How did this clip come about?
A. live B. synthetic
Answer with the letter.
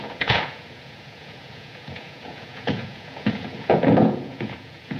B